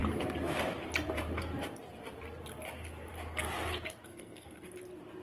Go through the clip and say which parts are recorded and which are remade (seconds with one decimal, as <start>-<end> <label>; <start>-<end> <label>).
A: 0.0-4.1 recorded; 4.1-4.7 remade; 4.7-5.2 recorded